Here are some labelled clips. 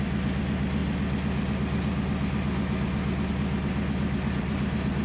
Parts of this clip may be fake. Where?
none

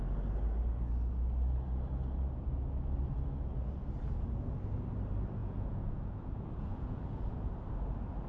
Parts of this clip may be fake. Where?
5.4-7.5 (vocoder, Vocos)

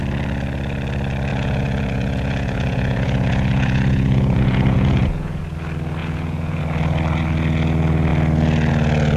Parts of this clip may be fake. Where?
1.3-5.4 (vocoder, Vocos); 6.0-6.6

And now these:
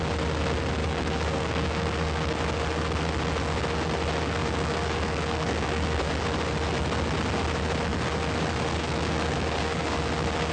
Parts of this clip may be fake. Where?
0.8-2.4 (codec, DAC); 4.4-6.1; 8.7-10.0